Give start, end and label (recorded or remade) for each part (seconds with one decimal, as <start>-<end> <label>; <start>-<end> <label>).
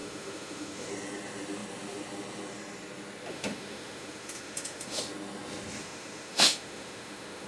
0.0-0.9 remade; 0.9-3.3 recorded; 3.3-5.0 remade; 5.0-5.8 recorded; 5.8-7.5 remade